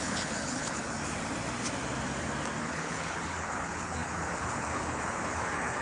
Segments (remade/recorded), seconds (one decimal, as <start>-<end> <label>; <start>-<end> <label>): 0.0-1.0 remade; 1.0-2.6 recorded; 2.6-5.8 remade